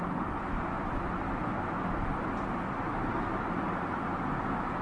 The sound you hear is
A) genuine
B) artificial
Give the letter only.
A